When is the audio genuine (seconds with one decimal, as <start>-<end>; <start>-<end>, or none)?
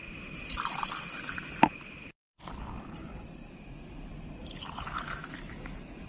0.0-3.5; 4.1-5.2